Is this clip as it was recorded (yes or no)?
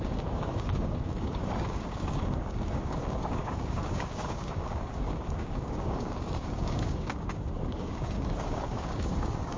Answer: no